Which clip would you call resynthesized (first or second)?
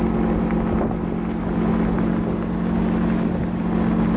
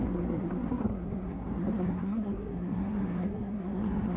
second